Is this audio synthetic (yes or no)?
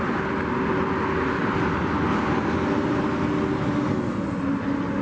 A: no